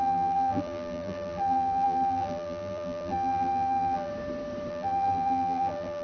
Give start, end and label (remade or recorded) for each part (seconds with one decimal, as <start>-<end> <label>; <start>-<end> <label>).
0.0-4.1 remade; 4.1-4.7 recorded; 4.7-6.0 remade